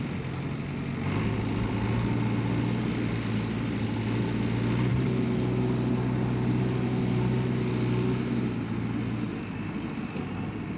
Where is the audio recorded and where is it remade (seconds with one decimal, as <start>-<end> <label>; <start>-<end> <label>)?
0.0-10.8 recorded